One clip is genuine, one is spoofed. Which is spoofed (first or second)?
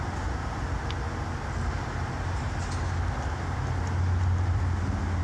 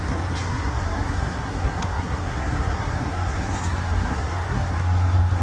second